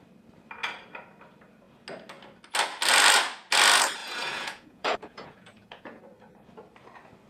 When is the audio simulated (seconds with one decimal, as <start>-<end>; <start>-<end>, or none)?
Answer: 4.0-6.0